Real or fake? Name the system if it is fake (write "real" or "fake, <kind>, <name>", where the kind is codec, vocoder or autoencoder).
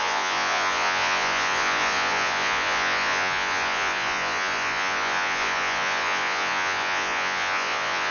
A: fake, vocoder, Vocos